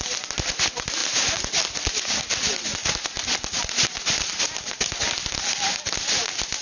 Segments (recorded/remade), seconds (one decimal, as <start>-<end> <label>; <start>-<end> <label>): 0.0-6.6 recorded